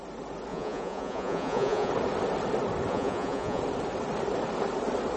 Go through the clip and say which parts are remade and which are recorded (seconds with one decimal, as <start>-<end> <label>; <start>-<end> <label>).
0.0-0.5 recorded; 0.5-1.9 remade; 1.9-2.9 recorded; 2.9-3.6 remade; 3.6-5.2 recorded